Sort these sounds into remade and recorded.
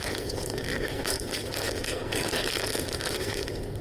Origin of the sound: remade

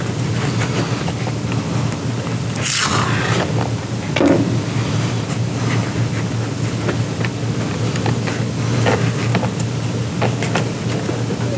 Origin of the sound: recorded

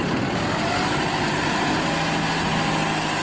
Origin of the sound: recorded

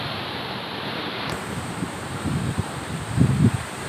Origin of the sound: remade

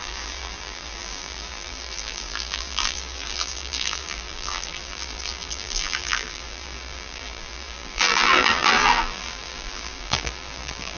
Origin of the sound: remade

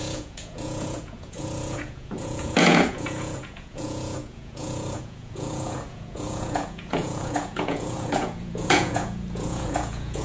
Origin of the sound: remade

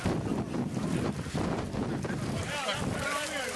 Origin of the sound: recorded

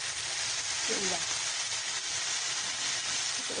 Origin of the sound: recorded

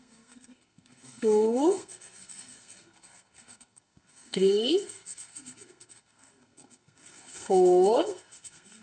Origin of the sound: remade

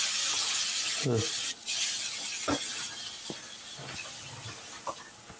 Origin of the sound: recorded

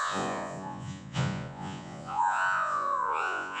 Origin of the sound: remade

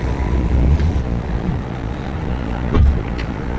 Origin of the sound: remade